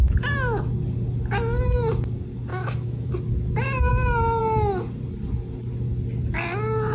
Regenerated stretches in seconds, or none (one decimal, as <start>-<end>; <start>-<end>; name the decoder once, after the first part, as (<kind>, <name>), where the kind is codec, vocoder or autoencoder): 2.5-3.1 (autoencoder, DAC-VAE)